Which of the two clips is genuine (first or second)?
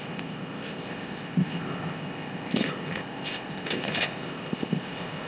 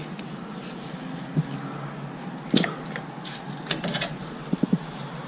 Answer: second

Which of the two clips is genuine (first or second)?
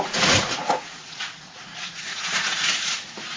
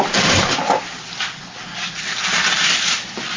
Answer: second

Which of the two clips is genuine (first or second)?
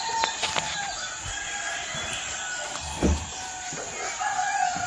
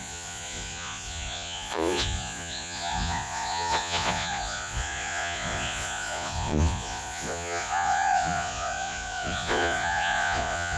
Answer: first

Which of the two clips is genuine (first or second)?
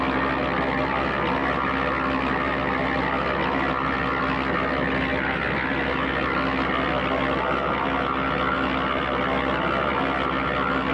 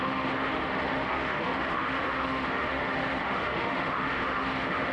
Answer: first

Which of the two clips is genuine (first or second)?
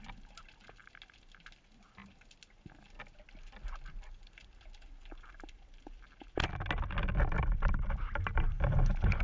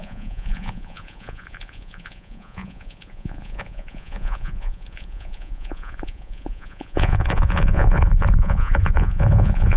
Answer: first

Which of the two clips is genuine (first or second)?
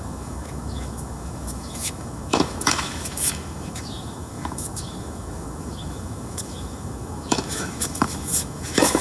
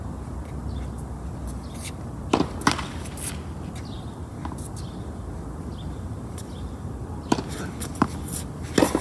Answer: second